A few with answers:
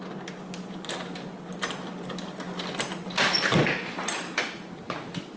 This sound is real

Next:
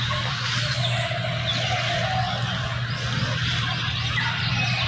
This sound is real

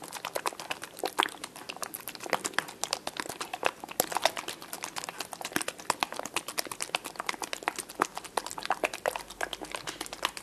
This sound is real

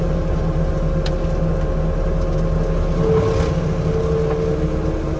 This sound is real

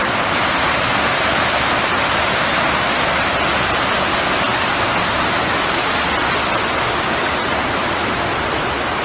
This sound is real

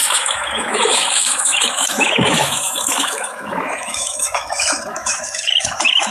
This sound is fake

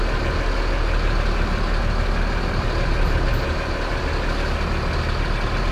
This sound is real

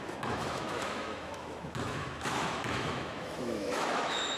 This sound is fake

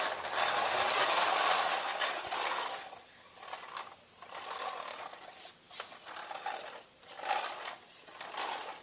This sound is real